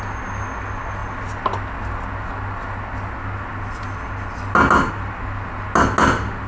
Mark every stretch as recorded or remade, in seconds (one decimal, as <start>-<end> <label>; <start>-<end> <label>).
0.0-6.5 recorded